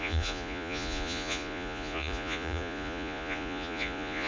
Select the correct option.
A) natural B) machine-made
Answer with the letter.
B